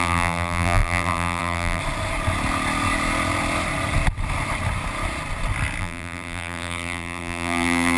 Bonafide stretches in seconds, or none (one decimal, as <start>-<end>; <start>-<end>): 1.8-5.8